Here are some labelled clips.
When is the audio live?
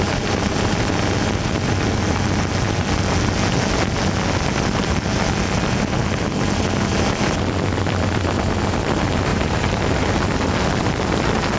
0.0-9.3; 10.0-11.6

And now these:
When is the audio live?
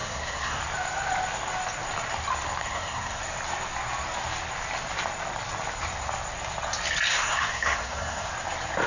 0.6-2.6; 3.2-7.1; 8.3-8.9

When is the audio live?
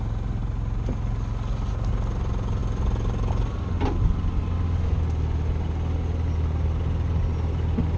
0.0-8.0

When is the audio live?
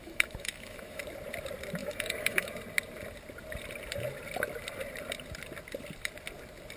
1.0-1.8; 2.5-6.8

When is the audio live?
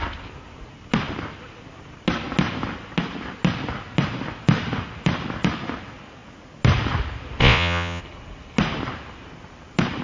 0.0-7.4; 8.0-10.0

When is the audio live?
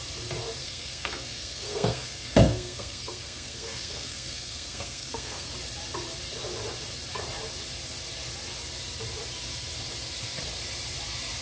0.0-0.6; 5.5-11.4